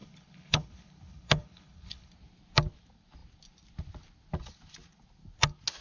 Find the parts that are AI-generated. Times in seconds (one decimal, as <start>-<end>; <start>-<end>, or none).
0.0-2.1